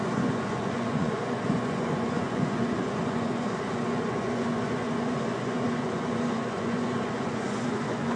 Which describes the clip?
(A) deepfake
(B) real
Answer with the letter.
A